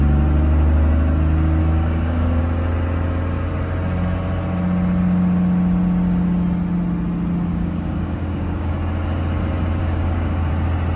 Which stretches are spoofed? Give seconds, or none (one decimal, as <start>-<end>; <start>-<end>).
1.6-2.4; 7.5-8.7; 9.8-10.5